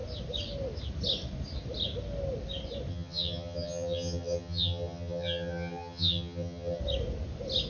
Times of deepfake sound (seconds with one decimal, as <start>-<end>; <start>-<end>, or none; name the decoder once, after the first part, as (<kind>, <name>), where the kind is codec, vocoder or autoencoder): 2.9-6.8 (vocoder, HiFi-GAN)